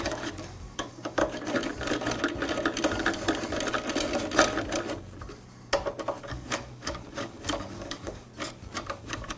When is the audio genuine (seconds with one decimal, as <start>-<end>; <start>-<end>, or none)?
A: 1.2-6.2; 8.3-9.0